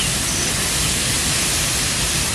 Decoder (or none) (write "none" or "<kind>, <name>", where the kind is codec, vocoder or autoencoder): none